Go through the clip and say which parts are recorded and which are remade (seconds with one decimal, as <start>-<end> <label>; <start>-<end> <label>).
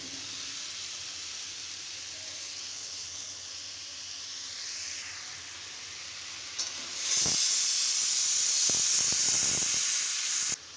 0.0-2.7 recorded; 2.7-3.5 remade; 3.5-10.8 recorded